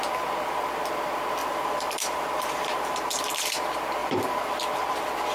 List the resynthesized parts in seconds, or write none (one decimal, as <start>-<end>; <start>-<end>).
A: 1.4-3.3; 4.0-4.5